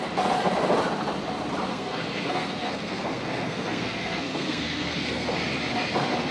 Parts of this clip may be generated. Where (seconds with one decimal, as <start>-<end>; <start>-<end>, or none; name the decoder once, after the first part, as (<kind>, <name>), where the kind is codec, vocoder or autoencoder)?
1.7-5.3 (codec, SNAC)